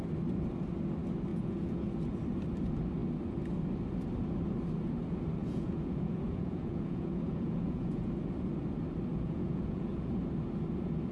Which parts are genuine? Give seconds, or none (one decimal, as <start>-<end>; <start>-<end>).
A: 0.0-1.3; 1.9-5.4; 8.1-9.1; 10.1-11.1

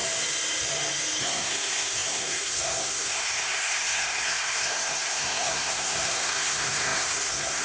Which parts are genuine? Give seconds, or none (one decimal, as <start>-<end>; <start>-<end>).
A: 0.0-1.2

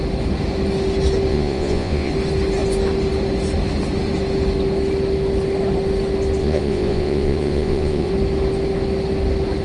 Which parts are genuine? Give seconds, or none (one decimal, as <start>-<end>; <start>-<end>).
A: 0.0-1.3; 2.1-6.4; 8.1-9.6